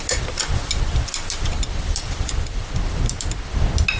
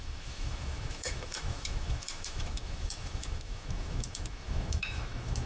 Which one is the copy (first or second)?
second